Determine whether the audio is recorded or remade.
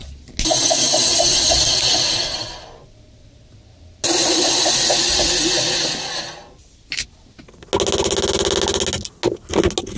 recorded